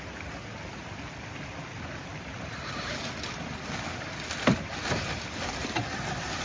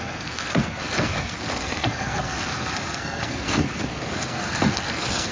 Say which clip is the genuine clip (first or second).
first